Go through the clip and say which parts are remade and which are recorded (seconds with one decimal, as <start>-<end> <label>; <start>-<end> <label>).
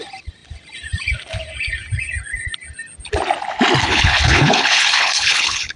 0.0-3.8 recorded; 3.8-5.8 remade